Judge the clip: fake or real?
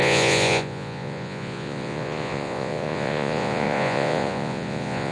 fake